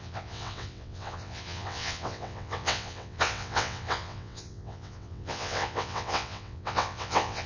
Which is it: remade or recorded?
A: remade